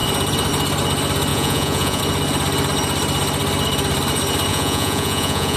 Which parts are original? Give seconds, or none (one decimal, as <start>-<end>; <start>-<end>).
0.0-1.3; 2.0-4.5